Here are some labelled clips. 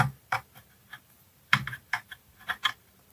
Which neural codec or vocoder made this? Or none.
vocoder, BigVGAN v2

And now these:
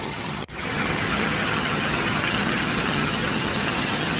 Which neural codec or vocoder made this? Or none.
vocoder, HiFi-GAN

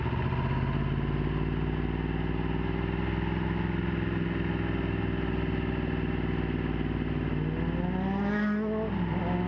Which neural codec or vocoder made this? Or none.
none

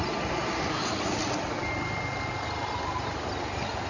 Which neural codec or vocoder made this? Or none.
none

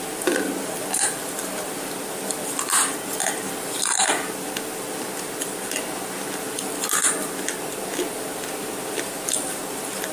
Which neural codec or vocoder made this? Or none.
none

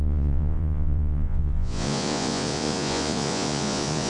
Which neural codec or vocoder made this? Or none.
vocoder, Vocos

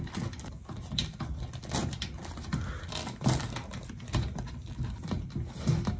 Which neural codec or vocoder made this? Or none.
none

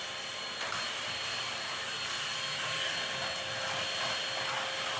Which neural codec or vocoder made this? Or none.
none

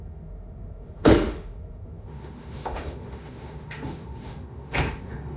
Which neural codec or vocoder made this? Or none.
autoencoder, DAC-VAE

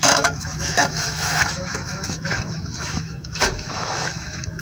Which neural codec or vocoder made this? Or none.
autoencoder, DAC-VAE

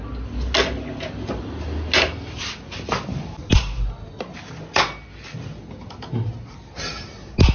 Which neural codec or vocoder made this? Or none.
none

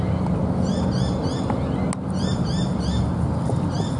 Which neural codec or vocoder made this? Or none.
none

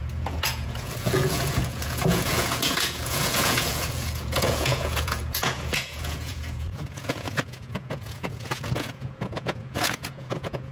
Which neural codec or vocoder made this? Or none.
vocoder, Vocos